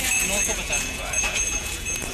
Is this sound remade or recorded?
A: remade